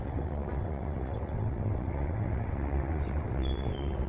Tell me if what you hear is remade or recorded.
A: remade